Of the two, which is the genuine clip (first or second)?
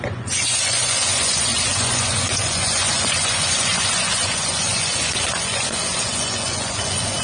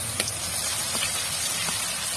second